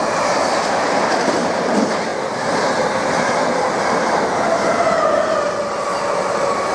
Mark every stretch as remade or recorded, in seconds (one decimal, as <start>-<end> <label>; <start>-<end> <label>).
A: 0.0-6.7 recorded